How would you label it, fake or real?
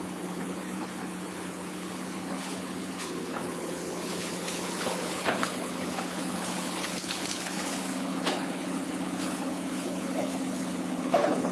fake